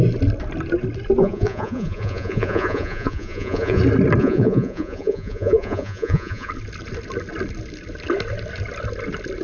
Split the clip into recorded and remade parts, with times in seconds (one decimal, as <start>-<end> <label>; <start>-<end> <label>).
0.0-1.2 recorded; 1.2-3.8 remade; 3.8-4.2 recorded; 4.2-6.5 remade; 6.5-9.4 recorded